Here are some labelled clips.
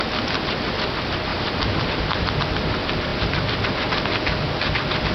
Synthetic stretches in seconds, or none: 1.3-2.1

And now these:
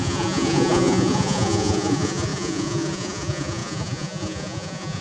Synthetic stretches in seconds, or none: 0.0-5.0

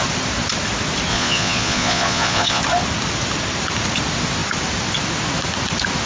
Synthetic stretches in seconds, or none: 1.1-2.6

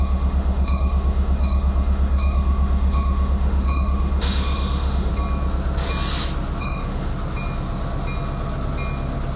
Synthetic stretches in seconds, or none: 0.0-5.1; 6.6-7.1